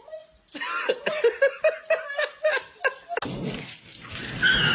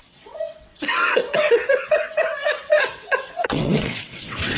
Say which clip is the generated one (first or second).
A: second